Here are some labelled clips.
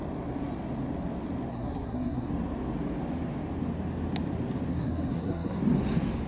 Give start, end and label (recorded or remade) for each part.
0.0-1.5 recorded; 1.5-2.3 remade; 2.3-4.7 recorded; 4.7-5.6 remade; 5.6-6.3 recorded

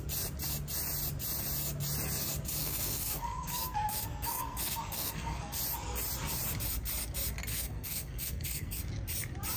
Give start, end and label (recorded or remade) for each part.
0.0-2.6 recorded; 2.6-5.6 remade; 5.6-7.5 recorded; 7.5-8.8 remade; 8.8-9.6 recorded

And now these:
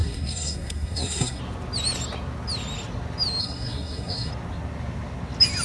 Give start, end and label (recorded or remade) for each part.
0.0-1.4 remade; 1.4-3.4 recorded; 3.4-4.3 remade; 4.3-5.6 recorded

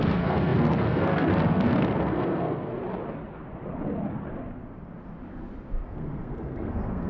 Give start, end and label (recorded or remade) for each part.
0.0-2.7 remade; 2.7-5.8 recorded; 5.8-7.1 remade

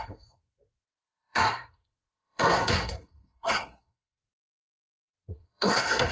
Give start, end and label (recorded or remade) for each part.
0.0-6.1 remade

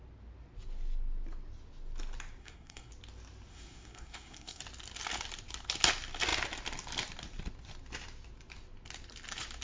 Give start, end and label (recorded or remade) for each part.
0.0-2.4 recorded; 2.4-2.9 remade; 2.9-3.5 recorded; 3.5-4.6 remade; 4.6-9.6 recorded